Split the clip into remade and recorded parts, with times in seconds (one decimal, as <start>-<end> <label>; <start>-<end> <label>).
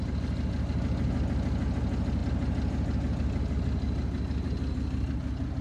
0.0-5.6 recorded